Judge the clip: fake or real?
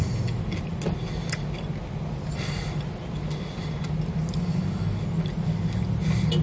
real